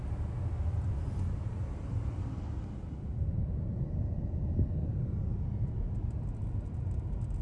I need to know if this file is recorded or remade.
recorded